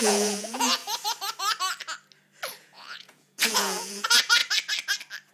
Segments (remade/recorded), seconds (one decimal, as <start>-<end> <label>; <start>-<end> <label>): 0.0-0.8 remade; 0.8-2.6 recorded; 2.6-4.4 remade; 4.4-5.3 recorded